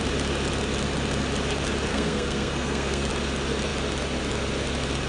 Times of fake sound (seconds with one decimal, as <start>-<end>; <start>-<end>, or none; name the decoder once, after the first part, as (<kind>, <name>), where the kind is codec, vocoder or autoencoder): 1.9-3.1 (codec, SNAC)